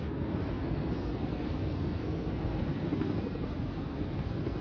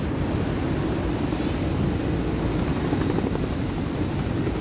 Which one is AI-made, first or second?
first